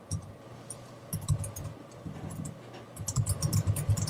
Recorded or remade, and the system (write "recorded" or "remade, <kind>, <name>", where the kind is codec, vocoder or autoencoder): remade, vocoder, BigVGAN v2